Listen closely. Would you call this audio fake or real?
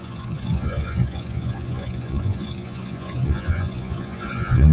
fake